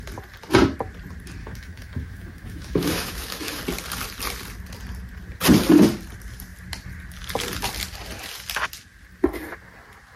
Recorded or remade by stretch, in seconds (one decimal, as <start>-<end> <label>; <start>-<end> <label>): 0.0-1.4 recorded; 1.4-3.6 remade; 3.6-10.2 recorded